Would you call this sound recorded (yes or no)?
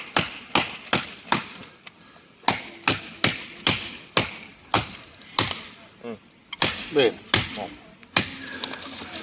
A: yes